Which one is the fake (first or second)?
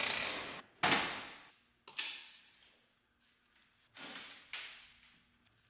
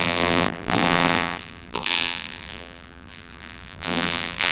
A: second